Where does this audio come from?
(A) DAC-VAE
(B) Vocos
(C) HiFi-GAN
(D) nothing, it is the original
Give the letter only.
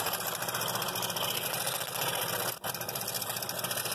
D